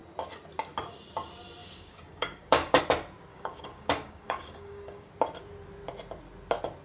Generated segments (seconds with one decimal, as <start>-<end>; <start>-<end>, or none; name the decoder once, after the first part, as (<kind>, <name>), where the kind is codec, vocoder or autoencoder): 1.6-2.8 (codec, DAC); 3.3-5.1